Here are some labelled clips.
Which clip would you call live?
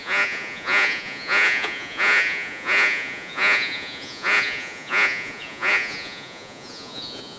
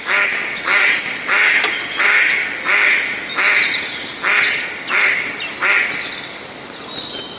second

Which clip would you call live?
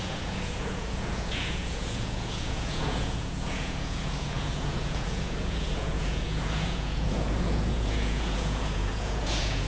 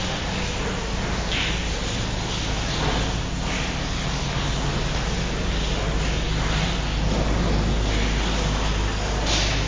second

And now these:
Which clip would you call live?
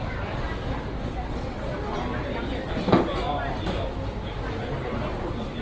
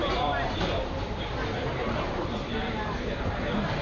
first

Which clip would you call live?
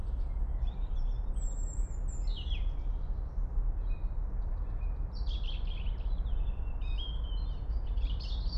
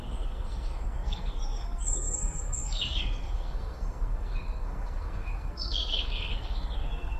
first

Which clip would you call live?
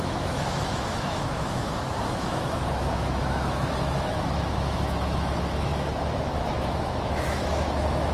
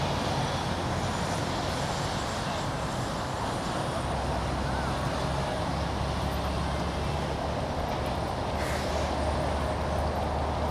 second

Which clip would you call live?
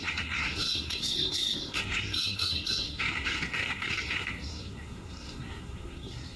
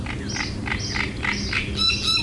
second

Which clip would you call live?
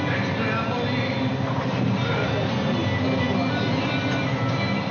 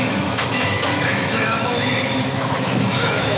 first